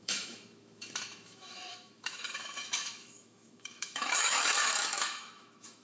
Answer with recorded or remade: remade